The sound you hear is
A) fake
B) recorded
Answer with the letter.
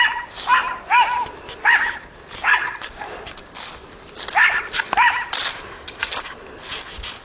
B